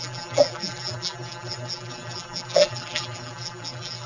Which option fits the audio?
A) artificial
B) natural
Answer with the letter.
A